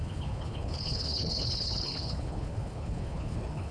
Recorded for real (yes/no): no